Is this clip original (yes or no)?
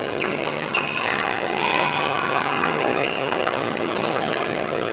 no